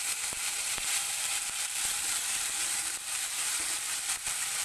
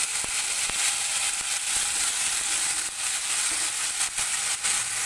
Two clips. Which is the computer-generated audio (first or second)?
first